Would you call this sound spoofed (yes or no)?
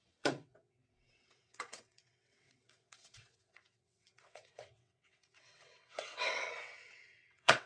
yes